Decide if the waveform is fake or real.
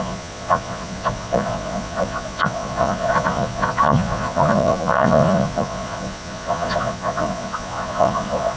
fake